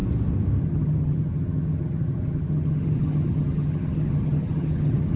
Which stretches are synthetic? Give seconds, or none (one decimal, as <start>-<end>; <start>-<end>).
0.6-5.2